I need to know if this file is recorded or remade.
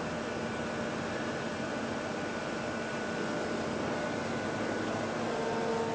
recorded